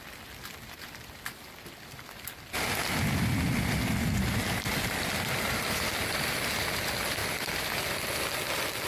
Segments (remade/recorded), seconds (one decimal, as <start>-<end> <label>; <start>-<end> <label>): 0.0-8.9 recorded